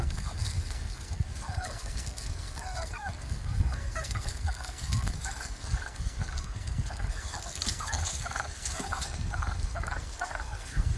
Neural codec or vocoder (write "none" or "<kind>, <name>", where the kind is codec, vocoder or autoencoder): codec, SNAC